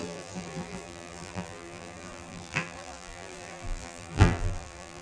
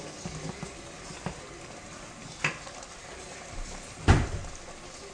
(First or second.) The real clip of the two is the second